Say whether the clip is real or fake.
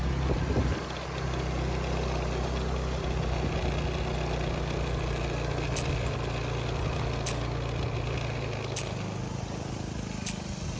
real